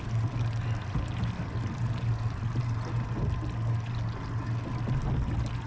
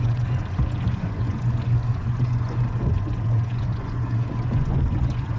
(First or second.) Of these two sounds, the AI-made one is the second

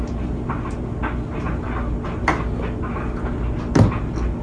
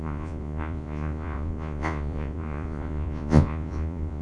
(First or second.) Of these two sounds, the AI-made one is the second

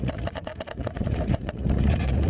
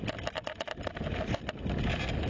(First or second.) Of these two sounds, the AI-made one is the first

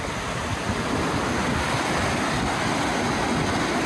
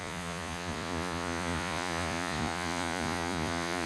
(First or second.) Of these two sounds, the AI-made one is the second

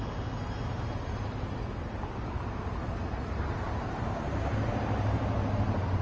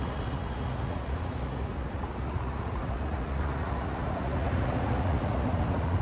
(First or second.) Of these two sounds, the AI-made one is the second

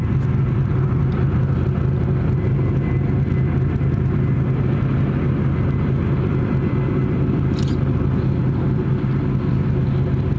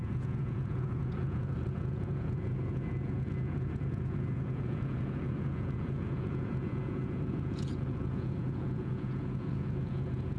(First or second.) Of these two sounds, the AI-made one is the second